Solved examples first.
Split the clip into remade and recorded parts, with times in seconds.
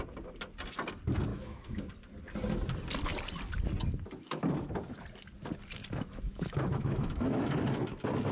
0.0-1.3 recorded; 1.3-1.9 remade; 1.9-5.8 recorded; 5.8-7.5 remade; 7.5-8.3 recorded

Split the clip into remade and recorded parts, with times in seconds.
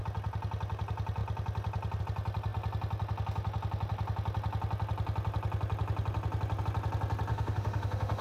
0.0-7.3 recorded; 7.3-8.2 remade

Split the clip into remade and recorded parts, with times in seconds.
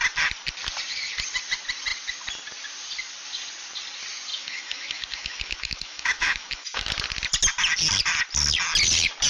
0.0-4.3 recorded; 4.3-6.9 remade; 6.9-9.3 recorded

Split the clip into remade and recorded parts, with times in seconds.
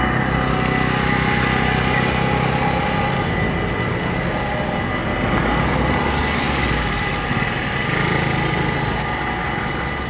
0.0-10.1 recorded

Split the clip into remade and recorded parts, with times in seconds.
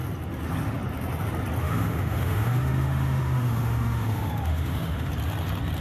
0.0-1.6 recorded; 1.6-5.1 remade; 5.1-5.8 recorded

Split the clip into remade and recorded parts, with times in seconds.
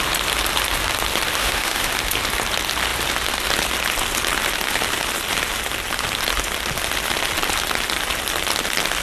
0.0-1.4 recorded; 1.4-1.9 remade; 1.9-9.0 recorded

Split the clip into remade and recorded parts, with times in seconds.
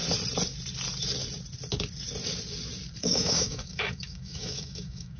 0.0-3.0 recorded; 3.0-5.2 remade